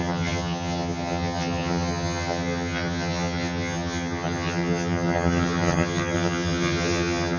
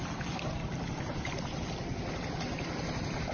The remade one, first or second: first